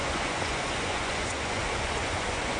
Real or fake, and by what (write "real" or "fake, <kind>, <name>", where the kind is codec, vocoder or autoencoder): fake, vocoder, Vocos